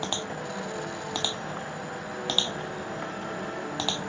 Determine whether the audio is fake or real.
real